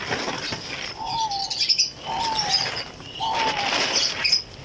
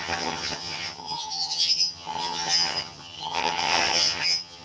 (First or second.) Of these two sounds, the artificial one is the second